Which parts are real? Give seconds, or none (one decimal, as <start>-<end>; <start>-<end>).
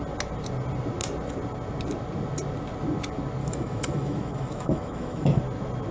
0.0-3.4; 5.4-5.9